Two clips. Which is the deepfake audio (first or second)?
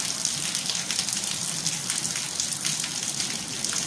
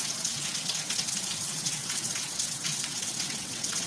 second